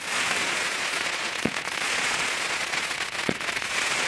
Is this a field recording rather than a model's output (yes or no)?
no